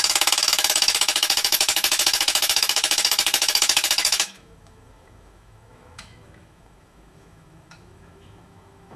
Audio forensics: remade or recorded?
remade